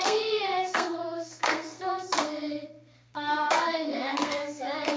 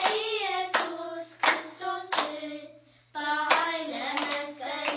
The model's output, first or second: first